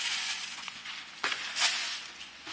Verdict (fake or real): fake